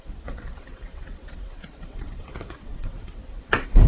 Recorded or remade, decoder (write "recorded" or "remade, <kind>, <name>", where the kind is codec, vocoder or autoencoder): remade, vocoder, WaveNeXt